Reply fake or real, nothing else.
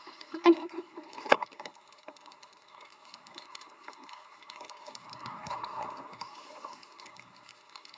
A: fake